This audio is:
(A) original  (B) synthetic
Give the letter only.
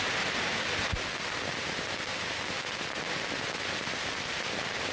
A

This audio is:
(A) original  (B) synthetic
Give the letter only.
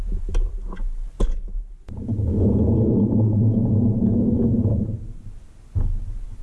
A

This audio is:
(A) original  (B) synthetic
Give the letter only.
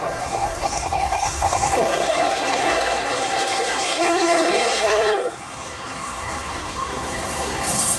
B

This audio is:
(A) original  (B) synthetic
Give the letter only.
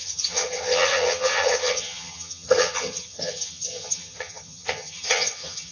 B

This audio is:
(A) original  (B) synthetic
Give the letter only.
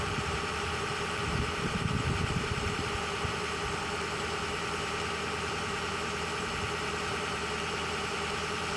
B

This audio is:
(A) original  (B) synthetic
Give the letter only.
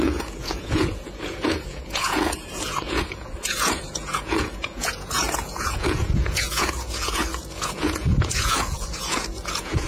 B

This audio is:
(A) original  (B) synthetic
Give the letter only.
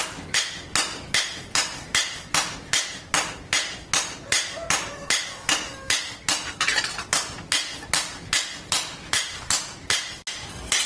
A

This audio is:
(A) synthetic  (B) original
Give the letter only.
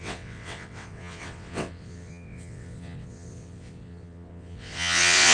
A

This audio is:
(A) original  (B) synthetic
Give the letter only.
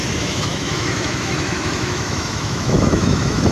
B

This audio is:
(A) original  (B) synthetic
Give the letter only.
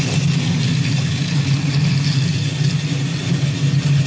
A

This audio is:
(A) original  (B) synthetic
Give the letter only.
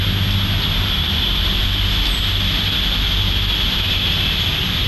A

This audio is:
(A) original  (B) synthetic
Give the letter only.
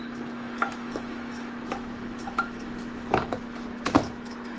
B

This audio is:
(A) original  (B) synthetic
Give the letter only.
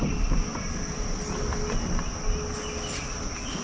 A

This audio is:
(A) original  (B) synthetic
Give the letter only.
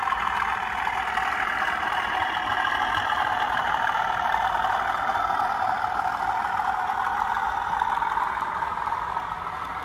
A